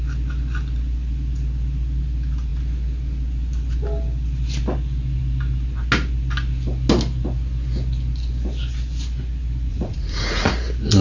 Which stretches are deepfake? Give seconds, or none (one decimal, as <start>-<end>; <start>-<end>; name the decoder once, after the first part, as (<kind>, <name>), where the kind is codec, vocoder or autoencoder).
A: 9.7-10.5 (vocoder, Vocos)